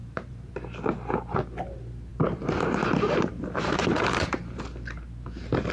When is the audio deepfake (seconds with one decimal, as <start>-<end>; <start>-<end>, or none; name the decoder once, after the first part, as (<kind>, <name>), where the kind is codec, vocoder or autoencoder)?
0.0-0.5 (vocoder, BigVGAN v2); 2.1-4.6